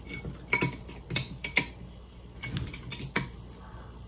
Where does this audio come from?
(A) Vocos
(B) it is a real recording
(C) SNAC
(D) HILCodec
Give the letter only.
B